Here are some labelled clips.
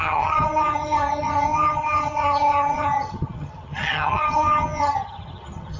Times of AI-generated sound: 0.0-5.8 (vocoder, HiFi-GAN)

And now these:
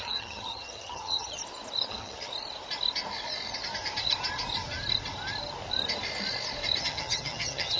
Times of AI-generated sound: 0.0-1.4 (vocoder, HiFi-GAN); 1.9-2.3; 6.8-7.8

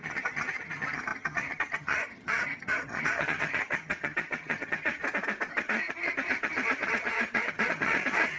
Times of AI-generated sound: 0.0-5.0 (vocoder, HiFi-GAN); 5.5-8.4

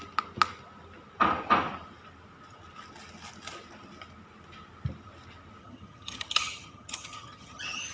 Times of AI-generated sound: 5.6-7.9 (vocoder, HiFi-GAN)

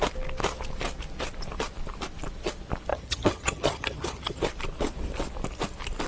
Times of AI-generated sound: 2.9-4.4 (vocoder, HiFi-GAN)

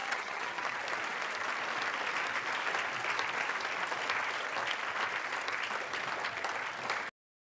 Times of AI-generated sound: 0.0-0.6 (vocoder, HiFi-GAN)

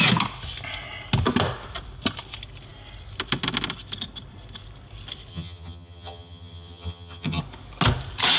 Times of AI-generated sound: 5.3-7.4 (vocoder, HiFi-GAN)

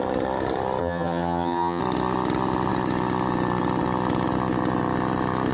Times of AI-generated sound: 0.8-1.8 (vocoder, HiFi-GAN)